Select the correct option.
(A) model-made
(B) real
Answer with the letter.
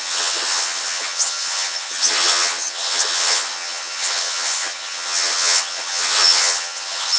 A